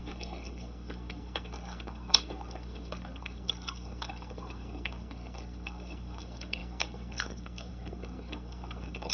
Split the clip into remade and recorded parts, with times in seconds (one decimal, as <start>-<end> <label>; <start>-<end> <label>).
0.0-9.1 remade